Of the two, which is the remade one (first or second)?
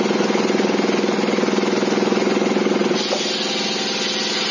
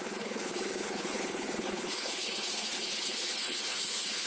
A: second